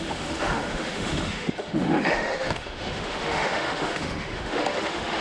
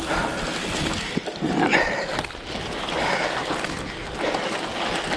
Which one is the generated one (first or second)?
first